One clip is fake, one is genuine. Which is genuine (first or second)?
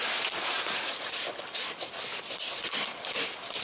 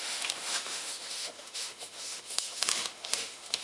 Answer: first